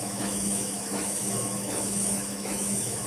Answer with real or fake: fake